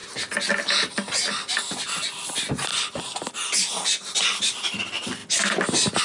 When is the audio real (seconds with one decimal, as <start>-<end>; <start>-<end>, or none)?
0.0-6.0

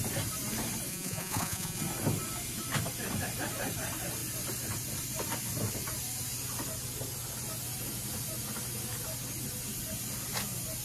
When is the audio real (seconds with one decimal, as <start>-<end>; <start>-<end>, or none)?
0.0-0.9; 1.8-10.8

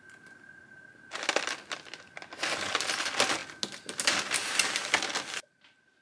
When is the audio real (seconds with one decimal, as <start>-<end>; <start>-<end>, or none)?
0.0-6.0

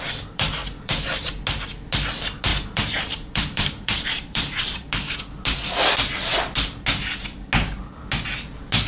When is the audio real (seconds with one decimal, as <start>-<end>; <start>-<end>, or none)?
0.0-0.6; 1.3-2.5; 4.9-8.9